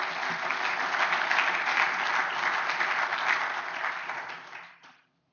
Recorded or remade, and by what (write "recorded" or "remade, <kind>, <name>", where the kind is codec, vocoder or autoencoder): recorded